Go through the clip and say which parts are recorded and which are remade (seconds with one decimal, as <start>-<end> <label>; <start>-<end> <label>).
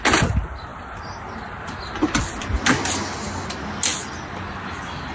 0.0-5.1 recorded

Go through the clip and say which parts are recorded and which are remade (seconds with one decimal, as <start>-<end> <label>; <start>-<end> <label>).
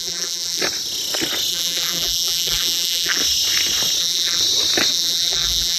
0.0-0.6 remade; 0.6-1.5 recorded; 1.5-3.2 remade; 3.2-4.0 recorded; 4.0-4.4 remade; 4.4-4.9 recorded; 4.9-5.8 remade